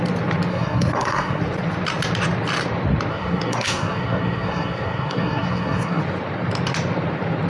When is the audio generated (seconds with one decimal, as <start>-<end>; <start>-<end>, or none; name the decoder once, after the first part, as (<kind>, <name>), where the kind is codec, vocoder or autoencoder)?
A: 0.5-1.4 (codec, SNAC); 3.1-6.0